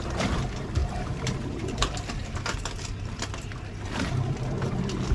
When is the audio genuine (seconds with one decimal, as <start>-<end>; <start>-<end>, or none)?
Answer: 0.0-0.8; 1.6-5.1